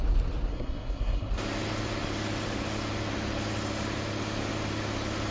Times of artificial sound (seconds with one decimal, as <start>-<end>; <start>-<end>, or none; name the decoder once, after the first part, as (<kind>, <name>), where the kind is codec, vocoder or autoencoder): 0.5-1.3 (codec, SNAC)